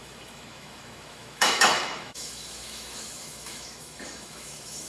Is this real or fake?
fake